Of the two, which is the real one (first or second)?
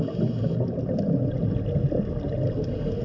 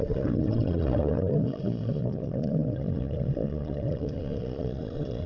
first